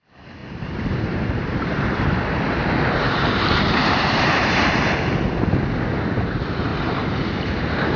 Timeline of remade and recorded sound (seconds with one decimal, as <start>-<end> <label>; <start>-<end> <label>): 0.0-0.4 recorded; 0.4-4.7 remade; 4.7-6.7 recorded; 6.7-8.0 remade